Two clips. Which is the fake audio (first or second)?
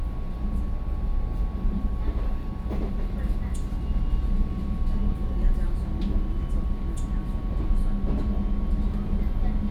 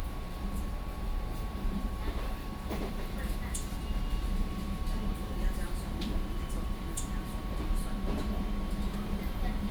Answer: second